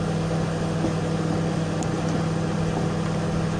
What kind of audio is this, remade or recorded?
recorded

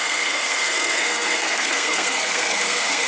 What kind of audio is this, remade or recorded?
remade